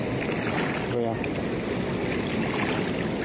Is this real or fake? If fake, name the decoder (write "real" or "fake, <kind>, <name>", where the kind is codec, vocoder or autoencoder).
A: real